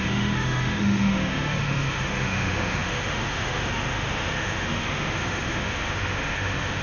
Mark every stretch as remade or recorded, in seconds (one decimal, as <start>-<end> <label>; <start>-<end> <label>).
0.0-6.8 remade